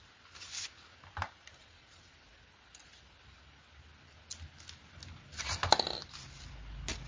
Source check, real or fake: real